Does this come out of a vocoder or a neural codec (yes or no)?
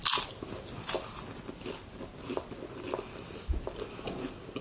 no